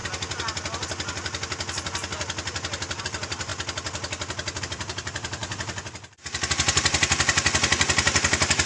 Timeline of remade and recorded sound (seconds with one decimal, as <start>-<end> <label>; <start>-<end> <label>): 0.0-3.0 recorded; 3.0-3.5 remade; 3.5-4.6 recorded; 4.6-8.7 remade